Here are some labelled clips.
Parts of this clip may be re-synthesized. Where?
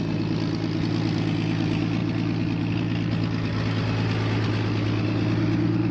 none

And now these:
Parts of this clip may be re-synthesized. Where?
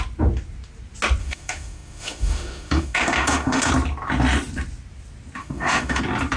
1.2-3.7 (autoencoder, DAC-VAE); 5.4-6.0